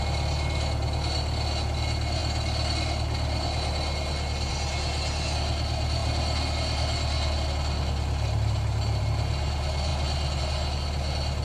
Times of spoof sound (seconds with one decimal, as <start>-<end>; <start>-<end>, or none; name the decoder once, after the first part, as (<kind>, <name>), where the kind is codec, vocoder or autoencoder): 2.2-4.5 (vocoder, BigVGAN v2); 6.0-9.0